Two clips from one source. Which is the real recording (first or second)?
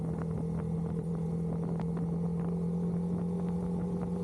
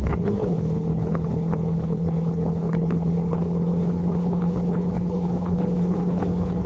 first